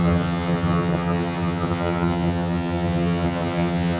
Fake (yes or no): yes